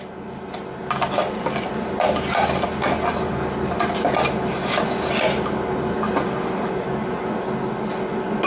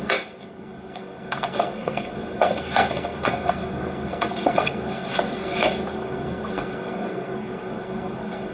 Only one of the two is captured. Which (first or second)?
first